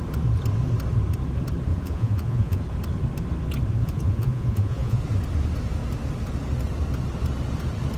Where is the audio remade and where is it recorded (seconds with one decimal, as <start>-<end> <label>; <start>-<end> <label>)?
0.0-1.7 recorded; 1.7-2.6 remade; 2.6-3.8 recorded; 3.8-5.0 remade; 5.0-8.0 recorded

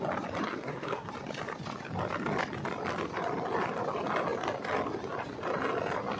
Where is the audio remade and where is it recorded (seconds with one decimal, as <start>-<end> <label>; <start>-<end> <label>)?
0.0-0.4 recorded; 0.4-1.1 remade; 1.1-6.2 recorded

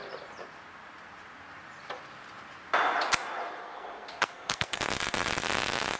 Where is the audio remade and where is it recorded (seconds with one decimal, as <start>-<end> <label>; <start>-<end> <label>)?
0.0-3.6 recorded; 3.6-4.8 remade; 4.8-6.0 recorded

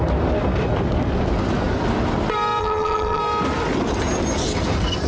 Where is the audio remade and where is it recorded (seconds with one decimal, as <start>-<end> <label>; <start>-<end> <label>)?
0.0-2.6 recorded; 2.6-3.2 remade; 3.2-5.1 recorded

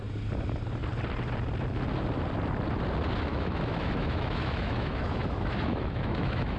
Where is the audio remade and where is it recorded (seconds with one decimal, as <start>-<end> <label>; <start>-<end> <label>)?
0.0-3.3 recorded; 3.3-6.6 remade